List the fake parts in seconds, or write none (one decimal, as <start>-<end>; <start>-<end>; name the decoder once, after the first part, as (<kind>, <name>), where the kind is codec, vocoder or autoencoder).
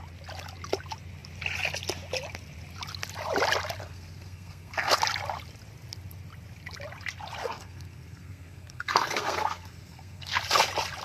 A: 3.8-5.0 (codec, SNAC); 7.4-10.4